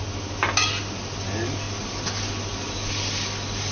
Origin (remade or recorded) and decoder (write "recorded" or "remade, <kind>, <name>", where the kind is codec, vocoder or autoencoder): recorded